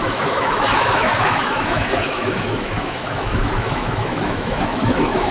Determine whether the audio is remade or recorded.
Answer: remade